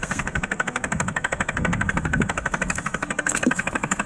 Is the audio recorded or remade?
remade